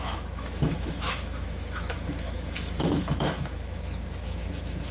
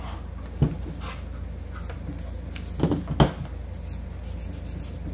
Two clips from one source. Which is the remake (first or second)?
first